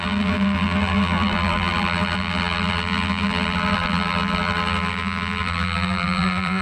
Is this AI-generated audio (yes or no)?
yes